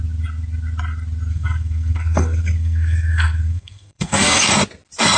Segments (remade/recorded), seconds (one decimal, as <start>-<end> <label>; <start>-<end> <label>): 0.0-1.3 recorded; 1.3-4.4 remade; 4.4-5.2 recorded